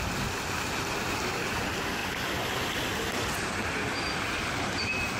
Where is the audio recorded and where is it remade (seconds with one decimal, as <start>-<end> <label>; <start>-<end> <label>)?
0.0-5.2 recorded